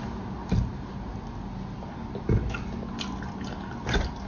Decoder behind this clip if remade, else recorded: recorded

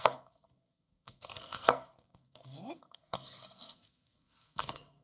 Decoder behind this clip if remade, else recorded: remade, codec, SNAC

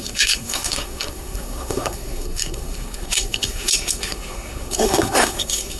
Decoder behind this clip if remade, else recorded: remade, codec, SNAC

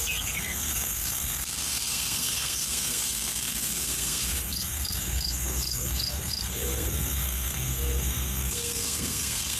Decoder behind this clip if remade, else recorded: remade, codec, SNAC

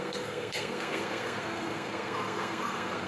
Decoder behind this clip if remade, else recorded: remade, codec, SNAC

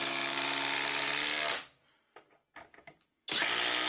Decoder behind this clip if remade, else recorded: recorded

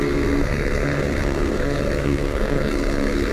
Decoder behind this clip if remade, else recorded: remade, codec, SNAC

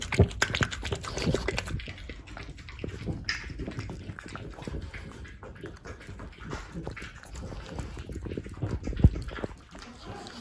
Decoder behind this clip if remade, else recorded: recorded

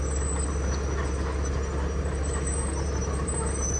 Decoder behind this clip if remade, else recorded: recorded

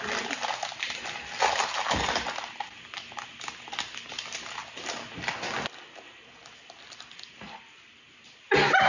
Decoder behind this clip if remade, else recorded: recorded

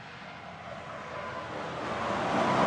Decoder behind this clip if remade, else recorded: recorded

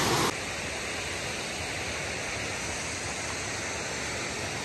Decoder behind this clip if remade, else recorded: recorded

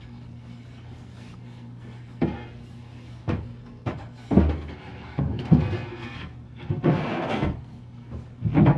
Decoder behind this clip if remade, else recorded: remade, codec, SNAC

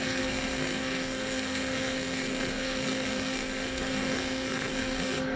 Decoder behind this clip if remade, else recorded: remade, codec, SNAC